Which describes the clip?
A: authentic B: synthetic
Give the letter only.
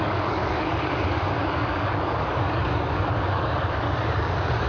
B